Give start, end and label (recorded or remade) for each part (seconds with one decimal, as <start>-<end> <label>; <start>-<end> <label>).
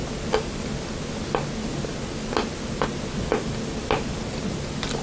0.0-5.0 recorded